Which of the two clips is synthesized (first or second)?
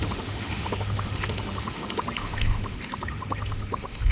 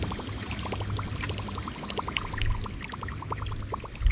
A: first